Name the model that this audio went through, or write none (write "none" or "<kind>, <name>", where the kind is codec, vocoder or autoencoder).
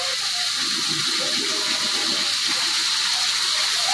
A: none